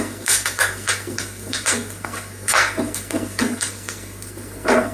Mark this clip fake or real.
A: fake